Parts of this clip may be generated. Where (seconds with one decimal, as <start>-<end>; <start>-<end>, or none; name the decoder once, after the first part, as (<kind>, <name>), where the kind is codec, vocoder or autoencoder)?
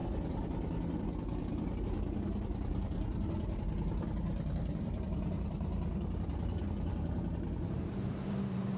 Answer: 1.8-5.7 (vocoder, BigVGAN v2); 7.7-8.8